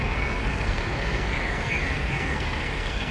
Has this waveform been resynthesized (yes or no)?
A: yes